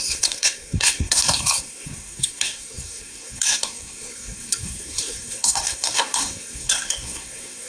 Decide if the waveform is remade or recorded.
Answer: remade